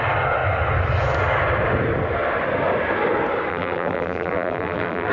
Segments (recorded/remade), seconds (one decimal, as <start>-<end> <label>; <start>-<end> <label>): 0.0-3.5 recorded; 3.5-5.1 remade